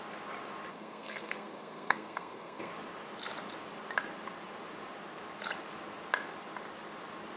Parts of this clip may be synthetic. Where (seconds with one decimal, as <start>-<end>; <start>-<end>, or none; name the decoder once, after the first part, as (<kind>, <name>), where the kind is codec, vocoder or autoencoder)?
0.7-2.7 (codec, SNAC)